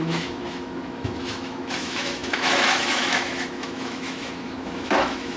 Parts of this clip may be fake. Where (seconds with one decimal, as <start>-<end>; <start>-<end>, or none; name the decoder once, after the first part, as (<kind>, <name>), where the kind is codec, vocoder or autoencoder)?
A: 0.0-5.4 (autoencoder, DAC-VAE)

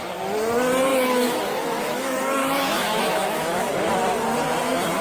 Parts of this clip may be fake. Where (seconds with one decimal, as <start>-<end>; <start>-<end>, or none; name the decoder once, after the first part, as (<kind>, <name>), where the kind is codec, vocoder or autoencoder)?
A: 0.9-3.9 (autoencoder, DAC-VAE)

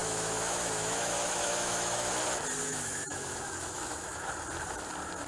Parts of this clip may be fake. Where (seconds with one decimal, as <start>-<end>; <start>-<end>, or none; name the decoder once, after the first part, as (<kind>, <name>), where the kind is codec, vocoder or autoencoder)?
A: 0.0-2.1 (autoencoder, DAC-VAE); 2.6-4.3

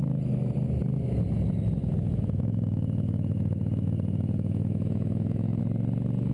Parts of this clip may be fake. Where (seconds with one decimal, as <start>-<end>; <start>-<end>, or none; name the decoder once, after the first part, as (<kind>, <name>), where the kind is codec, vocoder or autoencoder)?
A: 1.8-5.6 (autoencoder, DAC-VAE)

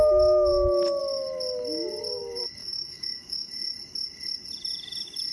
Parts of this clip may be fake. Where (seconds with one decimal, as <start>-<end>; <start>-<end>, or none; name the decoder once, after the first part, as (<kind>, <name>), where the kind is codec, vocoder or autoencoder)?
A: 2.6-3.5 (autoencoder, DAC-VAE)